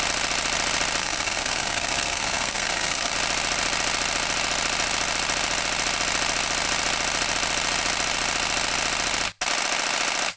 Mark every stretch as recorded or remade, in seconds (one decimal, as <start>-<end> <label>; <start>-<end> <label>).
0.0-1.0 recorded; 1.0-3.1 remade; 3.1-10.4 recorded